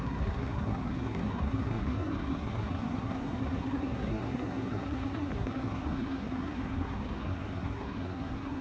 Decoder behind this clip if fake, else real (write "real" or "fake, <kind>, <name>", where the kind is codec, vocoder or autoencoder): fake, codec, SNAC